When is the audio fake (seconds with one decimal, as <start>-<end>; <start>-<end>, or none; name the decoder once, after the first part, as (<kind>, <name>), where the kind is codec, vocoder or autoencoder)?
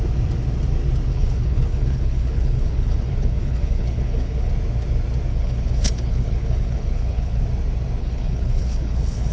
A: 1.1-4.5 (codec, HILCodec); 5.3-7.4; 8.0-9.3